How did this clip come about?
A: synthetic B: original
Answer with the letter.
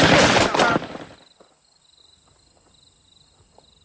B